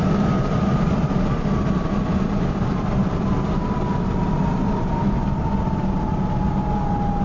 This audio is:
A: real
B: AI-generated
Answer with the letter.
A